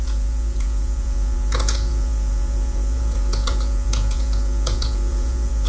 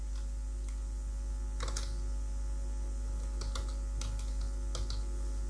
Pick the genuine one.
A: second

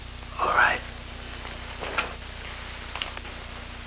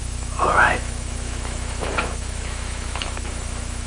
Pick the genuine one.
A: first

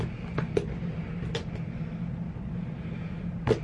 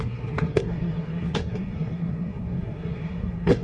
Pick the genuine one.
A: first